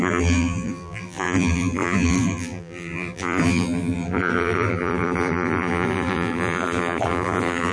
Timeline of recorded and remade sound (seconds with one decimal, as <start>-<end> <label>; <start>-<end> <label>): 0.0-7.7 remade

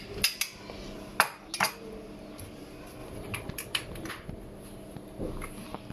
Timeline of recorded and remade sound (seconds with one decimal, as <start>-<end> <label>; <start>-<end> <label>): 0.0-3.0 recorded; 3.0-4.1 remade; 4.1-5.9 recorded